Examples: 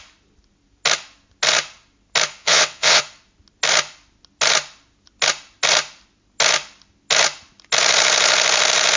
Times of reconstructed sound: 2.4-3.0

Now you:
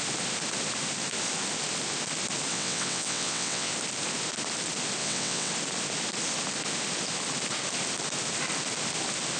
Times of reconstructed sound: 2.5-3.7; 5.0-5.5

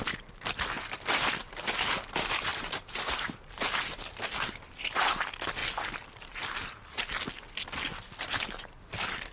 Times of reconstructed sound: none

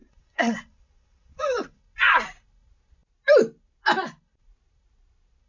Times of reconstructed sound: 0.0-1.8

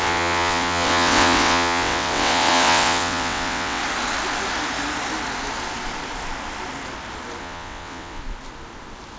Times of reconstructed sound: 0.0-3.8; 7.4-8.2

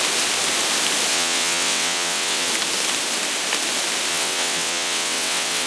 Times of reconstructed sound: 1.1-2.5; 4.1-5.7